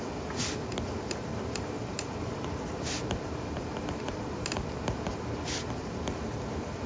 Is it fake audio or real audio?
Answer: real